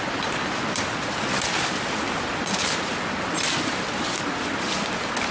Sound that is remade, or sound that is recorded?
recorded